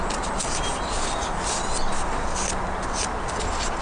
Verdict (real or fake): real